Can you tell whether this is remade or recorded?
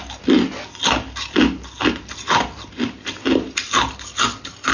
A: recorded